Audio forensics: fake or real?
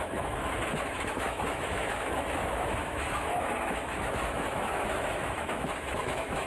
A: fake